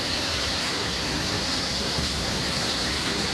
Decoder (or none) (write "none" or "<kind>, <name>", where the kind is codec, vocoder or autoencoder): codec, SNAC